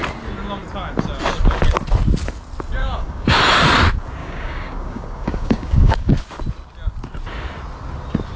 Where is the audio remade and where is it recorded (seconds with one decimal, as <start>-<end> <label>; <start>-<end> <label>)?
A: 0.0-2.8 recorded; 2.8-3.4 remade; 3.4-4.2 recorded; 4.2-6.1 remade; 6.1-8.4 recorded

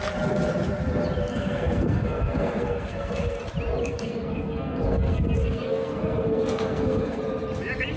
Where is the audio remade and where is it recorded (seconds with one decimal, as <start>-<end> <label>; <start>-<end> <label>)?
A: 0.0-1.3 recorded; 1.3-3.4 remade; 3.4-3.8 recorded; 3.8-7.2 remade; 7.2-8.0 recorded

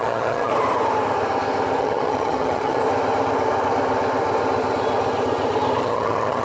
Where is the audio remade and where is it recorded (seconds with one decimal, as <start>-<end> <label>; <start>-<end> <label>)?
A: 0.0-0.5 remade; 0.5-1.8 recorded; 1.8-2.8 remade; 2.8-5.8 recorded; 5.8-6.4 remade

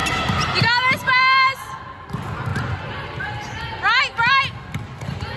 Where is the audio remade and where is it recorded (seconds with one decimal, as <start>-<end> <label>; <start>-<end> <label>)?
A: 0.0-5.4 recorded

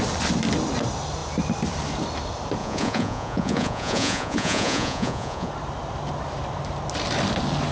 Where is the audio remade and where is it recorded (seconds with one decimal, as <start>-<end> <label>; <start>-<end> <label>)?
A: 0.0-2.6 recorded; 2.6-5.5 remade; 5.5-7.7 recorded

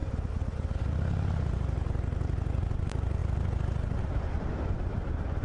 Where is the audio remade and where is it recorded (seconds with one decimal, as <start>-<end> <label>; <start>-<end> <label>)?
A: 0.0-5.4 recorded

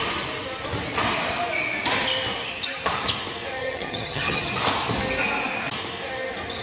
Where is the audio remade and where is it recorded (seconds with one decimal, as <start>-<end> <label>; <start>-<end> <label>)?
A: 0.0-3.6 recorded; 3.6-4.5 remade; 4.5-6.6 recorded

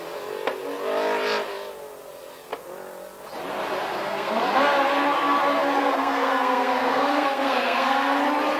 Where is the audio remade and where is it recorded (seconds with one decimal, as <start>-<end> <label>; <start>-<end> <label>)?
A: 0.0-3.9 recorded; 3.9-4.4 remade; 4.4-5.8 recorded; 5.8-8.2 remade; 8.2-8.6 recorded